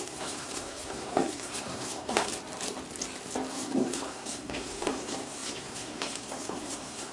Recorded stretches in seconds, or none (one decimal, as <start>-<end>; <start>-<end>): 2.3-3.5